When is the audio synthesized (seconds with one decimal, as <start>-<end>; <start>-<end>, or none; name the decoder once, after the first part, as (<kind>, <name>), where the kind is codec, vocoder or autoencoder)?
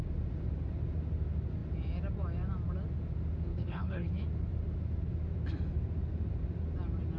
3.5-4.1 (codec, HILCodec)